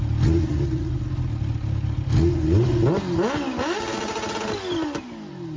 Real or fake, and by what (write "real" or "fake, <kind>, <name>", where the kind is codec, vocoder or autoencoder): real